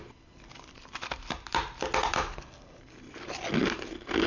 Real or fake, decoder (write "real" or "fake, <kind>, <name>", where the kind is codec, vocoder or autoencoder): real